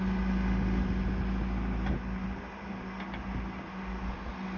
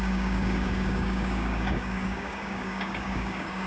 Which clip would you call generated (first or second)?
second